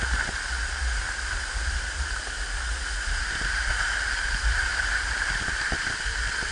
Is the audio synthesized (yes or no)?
no